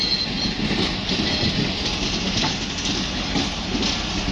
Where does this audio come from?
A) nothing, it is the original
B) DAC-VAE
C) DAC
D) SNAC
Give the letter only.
A